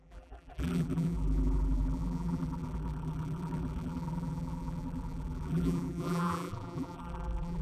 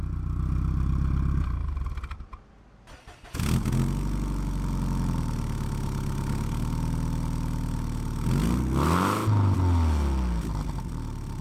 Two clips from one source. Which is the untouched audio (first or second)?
second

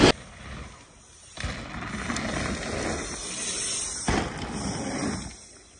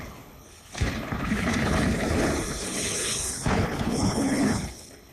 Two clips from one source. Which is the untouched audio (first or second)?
first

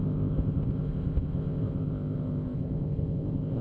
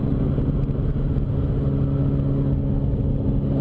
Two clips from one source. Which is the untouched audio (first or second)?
second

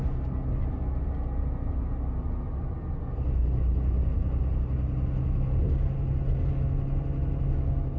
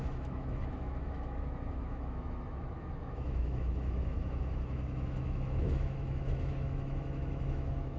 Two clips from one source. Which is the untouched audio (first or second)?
first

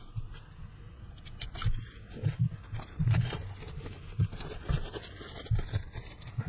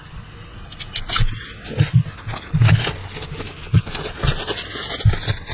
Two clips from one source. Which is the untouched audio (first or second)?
second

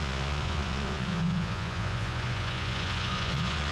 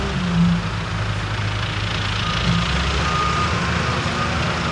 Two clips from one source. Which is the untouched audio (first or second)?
second